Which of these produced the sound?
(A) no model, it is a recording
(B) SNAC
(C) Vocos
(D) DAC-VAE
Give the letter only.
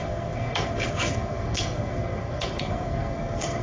B